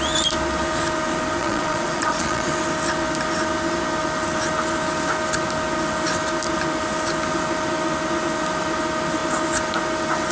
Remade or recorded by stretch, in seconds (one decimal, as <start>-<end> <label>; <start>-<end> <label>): 0.0-1.4 recorded; 1.4-2.5 remade; 2.5-10.3 recorded